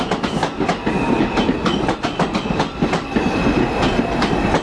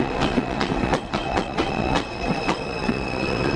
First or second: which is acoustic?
first